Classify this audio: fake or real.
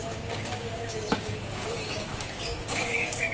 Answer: fake